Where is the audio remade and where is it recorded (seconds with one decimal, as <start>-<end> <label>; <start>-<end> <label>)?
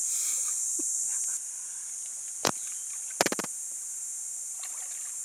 0.0-2.1 recorded; 2.1-2.8 remade; 2.8-5.2 recorded